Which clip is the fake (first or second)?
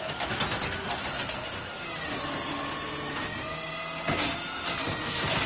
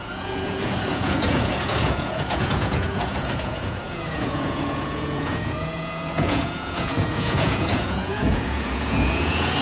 second